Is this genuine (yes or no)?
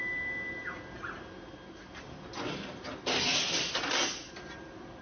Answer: yes